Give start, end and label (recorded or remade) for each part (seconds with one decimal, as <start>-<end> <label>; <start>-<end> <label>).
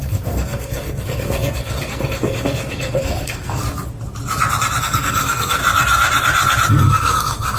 0.0-3.6 remade; 3.6-4.8 recorded; 4.8-5.6 remade; 5.6-6.7 recorded; 6.7-7.6 remade